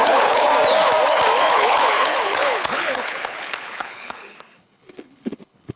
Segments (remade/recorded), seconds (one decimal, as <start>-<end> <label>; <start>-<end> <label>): 0.0-0.5 remade; 0.5-1.5 recorded; 1.5-5.8 remade